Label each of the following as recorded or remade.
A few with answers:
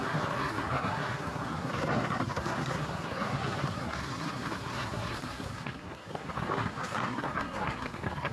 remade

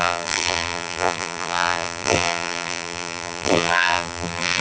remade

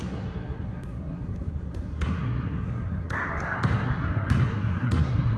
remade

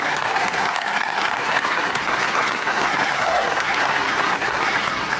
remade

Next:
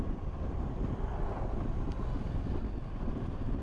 recorded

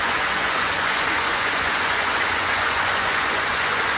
remade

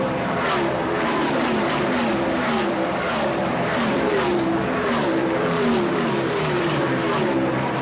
remade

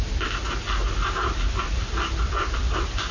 recorded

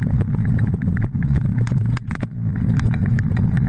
remade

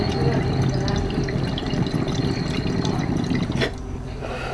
recorded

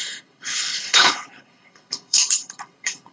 remade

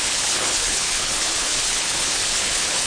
remade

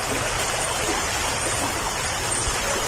recorded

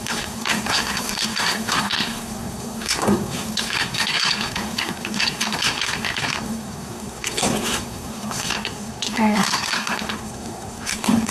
remade